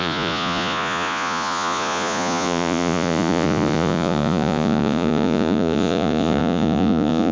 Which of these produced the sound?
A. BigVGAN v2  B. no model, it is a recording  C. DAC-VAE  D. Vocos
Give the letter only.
D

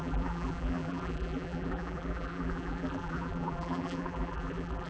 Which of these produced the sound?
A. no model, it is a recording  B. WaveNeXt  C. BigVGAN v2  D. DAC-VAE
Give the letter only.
C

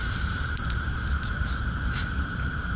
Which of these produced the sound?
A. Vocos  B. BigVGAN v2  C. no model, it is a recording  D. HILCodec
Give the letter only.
B